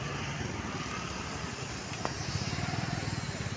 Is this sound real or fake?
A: real